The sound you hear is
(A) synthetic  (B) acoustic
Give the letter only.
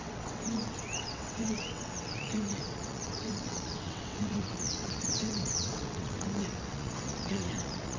A